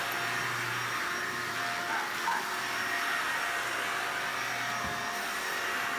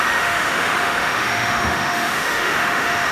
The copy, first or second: second